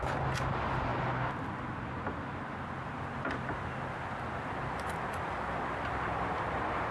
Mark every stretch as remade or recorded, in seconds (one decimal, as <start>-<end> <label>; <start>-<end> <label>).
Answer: 0.0-6.9 recorded